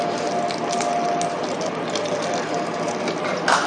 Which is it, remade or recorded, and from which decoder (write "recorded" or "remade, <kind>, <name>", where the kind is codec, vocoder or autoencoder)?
recorded